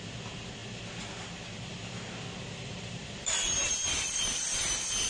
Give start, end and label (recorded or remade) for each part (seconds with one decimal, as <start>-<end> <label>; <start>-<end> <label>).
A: 0.0-5.1 recorded